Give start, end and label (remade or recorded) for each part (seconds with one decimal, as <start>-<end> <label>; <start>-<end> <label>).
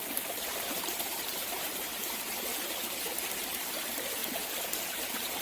0.0-2.5 remade; 2.5-3.5 recorded; 3.5-4.2 remade; 4.2-4.8 recorded; 4.8-5.4 remade